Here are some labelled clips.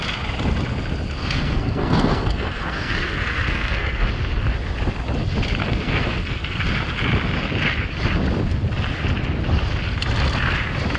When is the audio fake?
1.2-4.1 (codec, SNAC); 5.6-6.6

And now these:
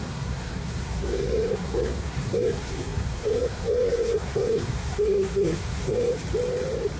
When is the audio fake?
0.0-6.1 (codec, SNAC)